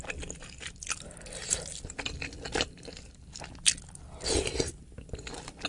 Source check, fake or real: real